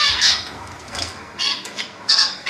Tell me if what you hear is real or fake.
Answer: fake